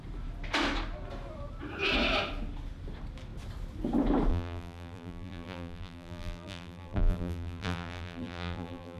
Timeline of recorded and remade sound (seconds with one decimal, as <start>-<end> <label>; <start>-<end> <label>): 0.0-4.3 recorded; 4.3-9.0 remade